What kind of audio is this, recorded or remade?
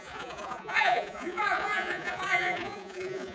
remade